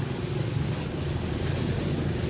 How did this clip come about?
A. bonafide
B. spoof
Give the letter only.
A